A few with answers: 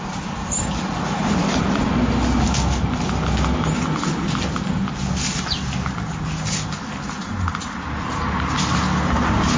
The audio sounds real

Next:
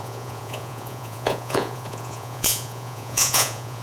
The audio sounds fake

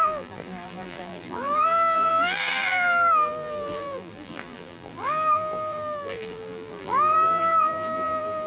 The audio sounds fake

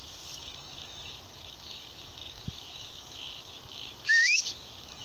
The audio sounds fake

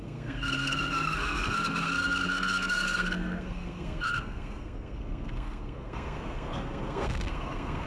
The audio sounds fake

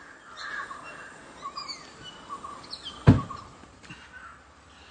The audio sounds real